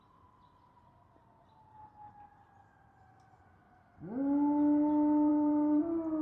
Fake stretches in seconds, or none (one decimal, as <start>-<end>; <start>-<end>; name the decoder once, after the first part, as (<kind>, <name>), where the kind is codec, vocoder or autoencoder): 5.3-5.8 (vocoder, BigVGAN v2)